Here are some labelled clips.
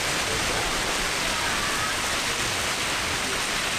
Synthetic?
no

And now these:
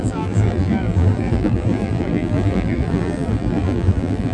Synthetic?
yes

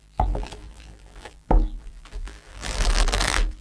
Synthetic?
yes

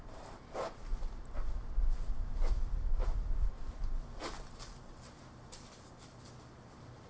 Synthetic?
no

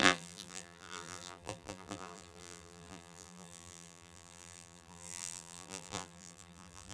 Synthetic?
yes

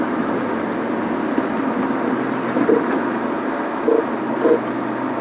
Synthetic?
no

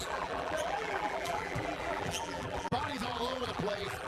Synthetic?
yes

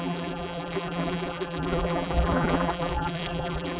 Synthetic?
yes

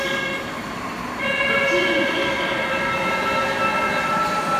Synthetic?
yes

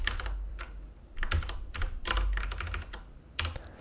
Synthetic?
yes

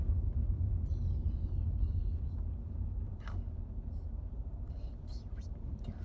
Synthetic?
yes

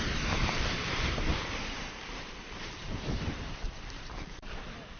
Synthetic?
yes